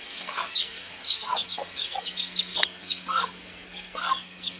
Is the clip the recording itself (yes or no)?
no